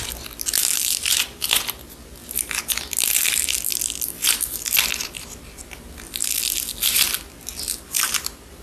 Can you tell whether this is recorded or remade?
recorded